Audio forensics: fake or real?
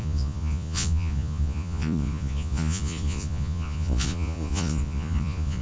fake